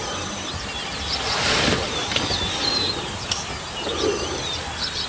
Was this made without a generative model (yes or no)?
yes